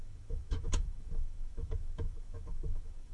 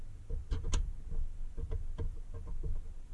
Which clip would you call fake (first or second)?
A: first